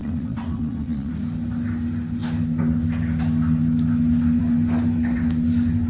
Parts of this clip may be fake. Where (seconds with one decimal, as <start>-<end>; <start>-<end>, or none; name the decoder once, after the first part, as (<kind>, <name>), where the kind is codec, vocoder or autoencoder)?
0.0-1.1 (vocoder, WaveNeXt)